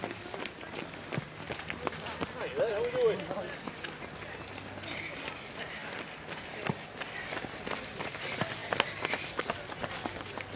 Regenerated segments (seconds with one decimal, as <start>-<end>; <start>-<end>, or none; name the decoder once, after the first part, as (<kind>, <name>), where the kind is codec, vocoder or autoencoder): none